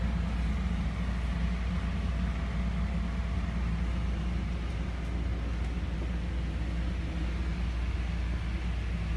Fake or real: real